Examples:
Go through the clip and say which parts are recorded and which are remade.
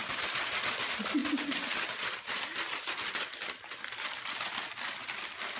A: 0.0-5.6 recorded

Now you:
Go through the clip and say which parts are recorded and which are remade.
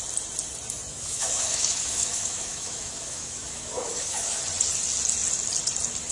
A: 0.0-0.9 recorded; 0.9-4.4 remade; 4.4-6.1 recorded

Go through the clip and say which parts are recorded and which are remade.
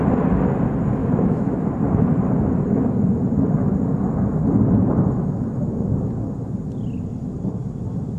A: 0.0-1.0 recorded; 1.0-1.7 remade; 1.7-8.2 recorded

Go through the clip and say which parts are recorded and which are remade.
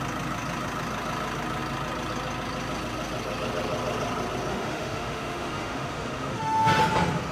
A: 0.0-4.5 recorded; 4.5-6.8 remade; 6.8-7.3 recorded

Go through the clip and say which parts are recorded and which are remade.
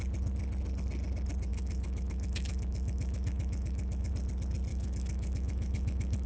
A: 0.0-1.5 recorded; 1.5-4.1 remade; 4.1-4.7 recorded; 4.7-6.3 remade